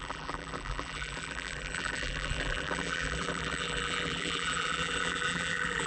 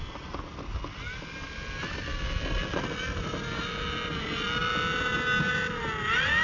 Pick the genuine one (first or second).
second